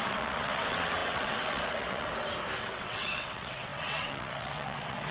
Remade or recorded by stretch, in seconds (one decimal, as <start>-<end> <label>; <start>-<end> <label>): 0.0-2.1 remade; 2.1-2.6 recorded; 2.6-5.1 remade